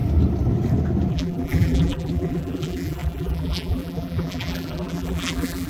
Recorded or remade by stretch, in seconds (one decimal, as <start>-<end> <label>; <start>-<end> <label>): 0.0-1.1 recorded; 1.1-5.7 remade